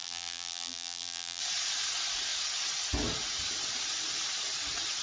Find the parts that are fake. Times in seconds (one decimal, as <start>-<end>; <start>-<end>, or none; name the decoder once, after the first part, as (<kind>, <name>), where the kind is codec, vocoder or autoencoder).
0.0-1.4 (vocoder, BigVGAN v2)

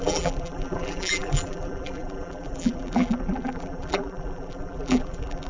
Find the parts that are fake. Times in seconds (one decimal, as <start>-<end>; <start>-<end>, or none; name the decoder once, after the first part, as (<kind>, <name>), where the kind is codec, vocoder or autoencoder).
0.0-5.5 (vocoder, BigVGAN v2)